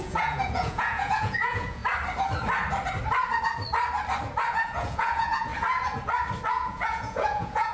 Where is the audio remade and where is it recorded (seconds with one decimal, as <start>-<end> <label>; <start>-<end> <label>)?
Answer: 0.0-1.8 remade; 1.8-4.5 recorded; 4.5-5.5 remade; 5.5-6.5 recorded; 6.5-7.7 remade